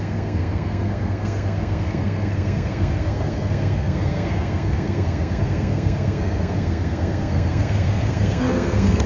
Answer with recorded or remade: remade